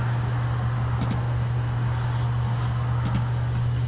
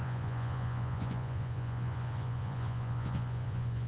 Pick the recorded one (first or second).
first